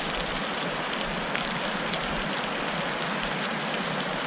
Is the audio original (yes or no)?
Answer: yes